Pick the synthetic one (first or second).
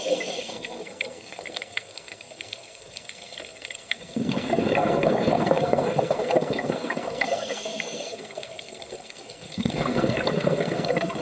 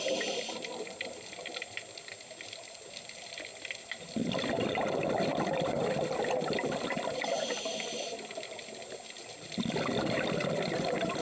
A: first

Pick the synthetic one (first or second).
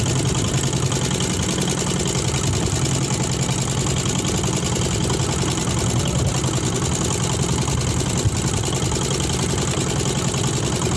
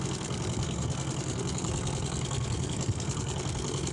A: second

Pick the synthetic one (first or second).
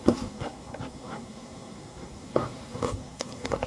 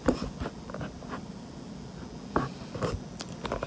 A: first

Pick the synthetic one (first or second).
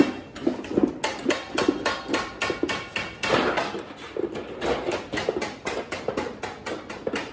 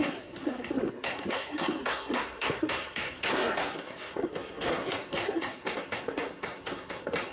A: second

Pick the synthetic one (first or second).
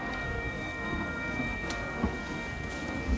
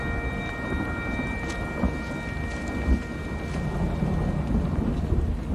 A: first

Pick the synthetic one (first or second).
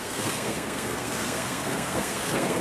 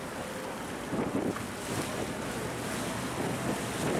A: first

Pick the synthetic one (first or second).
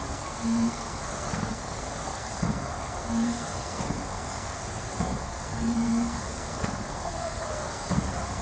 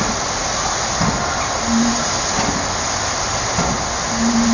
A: first